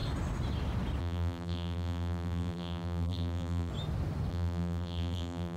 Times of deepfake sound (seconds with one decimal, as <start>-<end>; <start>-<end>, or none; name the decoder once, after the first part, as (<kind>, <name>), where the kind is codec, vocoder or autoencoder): 1.0-3.7 (vocoder, BigVGAN v2); 4.3-5.6